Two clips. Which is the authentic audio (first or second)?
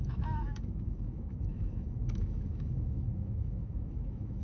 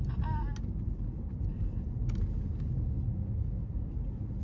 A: second